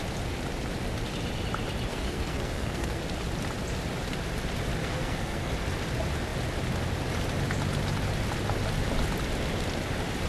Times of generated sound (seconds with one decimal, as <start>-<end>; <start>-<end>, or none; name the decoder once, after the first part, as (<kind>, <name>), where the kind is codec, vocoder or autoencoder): 1.9-3.0 (codec, SNAC); 4.8-5.5